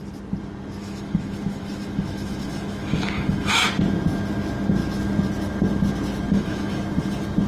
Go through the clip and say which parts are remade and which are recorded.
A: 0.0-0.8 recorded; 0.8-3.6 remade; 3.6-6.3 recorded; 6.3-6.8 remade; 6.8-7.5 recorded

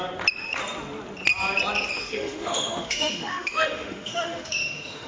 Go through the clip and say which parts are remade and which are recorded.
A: 0.0-2.0 recorded; 2.0-5.1 remade

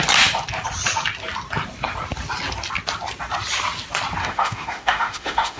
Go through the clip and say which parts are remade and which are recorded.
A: 0.0-4.2 recorded; 4.2-5.6 remade

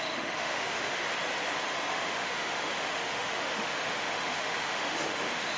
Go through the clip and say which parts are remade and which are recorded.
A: 0.0-1.0 remade; 1.0-1.9 recorded; 1.9-5.6 remade